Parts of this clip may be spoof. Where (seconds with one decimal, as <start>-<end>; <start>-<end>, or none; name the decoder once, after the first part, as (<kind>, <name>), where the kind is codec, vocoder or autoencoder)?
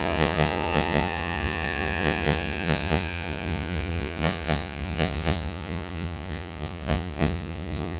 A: 0.0-8.0 (vocoder, Vocos)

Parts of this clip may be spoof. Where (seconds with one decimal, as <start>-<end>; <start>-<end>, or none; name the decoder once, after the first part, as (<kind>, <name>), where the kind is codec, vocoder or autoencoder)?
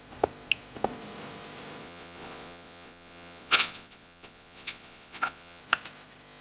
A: 1.8-5.6 (vocoder, Vocos)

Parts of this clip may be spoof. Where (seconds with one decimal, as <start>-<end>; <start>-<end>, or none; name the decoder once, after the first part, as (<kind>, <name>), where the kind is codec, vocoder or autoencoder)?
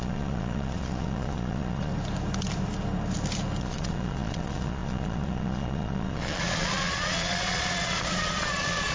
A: 0.0-1.9 (vocoder, Vocos); 3.6-8.9